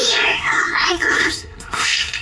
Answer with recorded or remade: remade